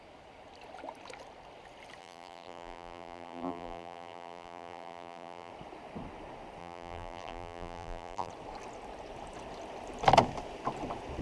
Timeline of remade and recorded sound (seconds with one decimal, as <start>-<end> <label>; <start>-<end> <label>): 0.0-2.0 recorded; 2.0-5.5 remade; 5.5-6.6 recorded; 6.6-8.3 remade; 8.3-11.2 recorded